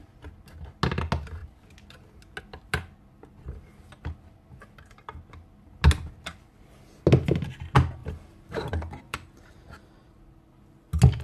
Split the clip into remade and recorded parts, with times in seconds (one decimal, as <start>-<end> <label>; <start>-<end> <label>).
0.0-8.0 recorded; 8.0-10.1 remade; 10.1-11.2 recorded